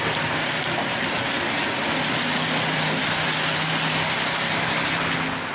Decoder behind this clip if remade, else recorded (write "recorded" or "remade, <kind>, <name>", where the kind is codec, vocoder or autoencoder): recorded